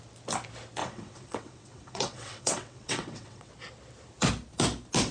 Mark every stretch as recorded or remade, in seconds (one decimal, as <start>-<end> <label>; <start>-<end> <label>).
0.0-0.8 recorded; 0.8-3.5 remade; 3.5-5.1 recorded